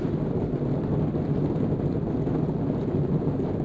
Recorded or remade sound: recorded